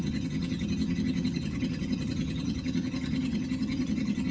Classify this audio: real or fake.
fake